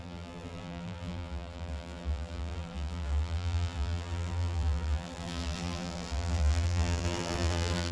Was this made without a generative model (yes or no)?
no